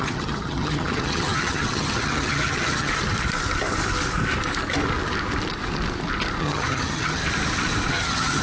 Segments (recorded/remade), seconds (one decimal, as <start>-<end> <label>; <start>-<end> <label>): 0.0-2.9 remade; 2.9-6.4 recorded; 6.4-7.2 remade; 7.2-7.9 recorded; 7.9-8.4 remade